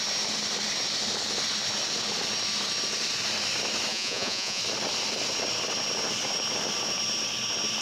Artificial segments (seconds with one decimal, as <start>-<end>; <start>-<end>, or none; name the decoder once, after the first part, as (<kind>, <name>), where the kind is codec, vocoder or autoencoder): 3.9-4.6 (vocoder, Vocos)